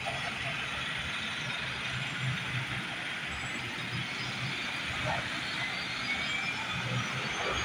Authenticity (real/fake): real